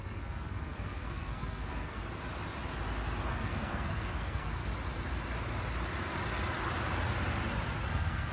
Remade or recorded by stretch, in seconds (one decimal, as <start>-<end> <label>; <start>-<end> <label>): 0.0-2.0 remade; 2.0-3.3 recorded; 3.3-4.6 remade; 4.6-7.9 recorded; 7.9-8.3 remade